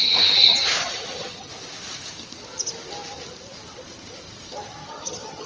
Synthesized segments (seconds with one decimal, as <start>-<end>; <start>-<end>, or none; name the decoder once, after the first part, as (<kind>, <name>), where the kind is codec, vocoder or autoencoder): 0.8-1.5 (vocoder, HiFi-GAN); 4.8-5.5